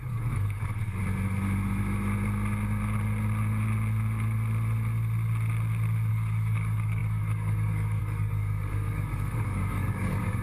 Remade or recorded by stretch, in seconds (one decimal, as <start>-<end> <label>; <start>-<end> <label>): 0.0-1.0 remade; 1.0-6.1 recorded; 6.1-10.4 remade